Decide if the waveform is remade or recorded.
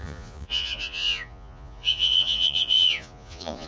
remade